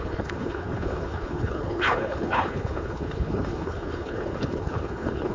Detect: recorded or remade remade